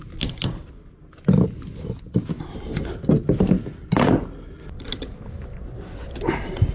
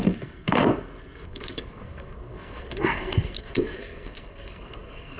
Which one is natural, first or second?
first